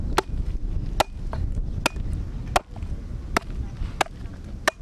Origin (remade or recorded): recorded